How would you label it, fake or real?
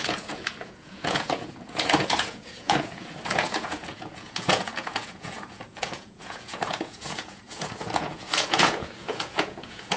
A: fake